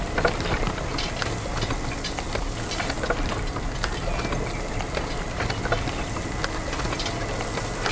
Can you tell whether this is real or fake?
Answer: real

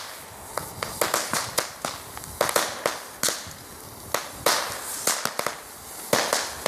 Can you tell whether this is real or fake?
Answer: real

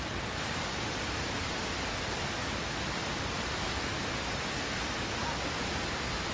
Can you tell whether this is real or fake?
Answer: real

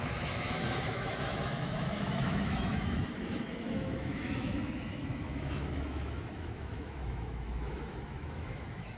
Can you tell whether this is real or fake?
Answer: fake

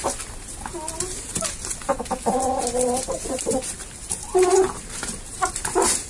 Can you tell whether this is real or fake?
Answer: real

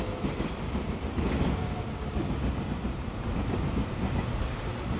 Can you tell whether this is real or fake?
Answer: real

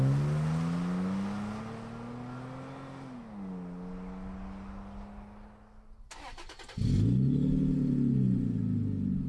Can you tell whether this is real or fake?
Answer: real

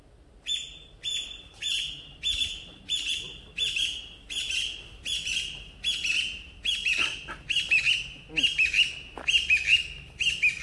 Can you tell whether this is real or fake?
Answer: real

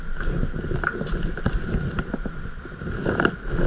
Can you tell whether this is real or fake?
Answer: real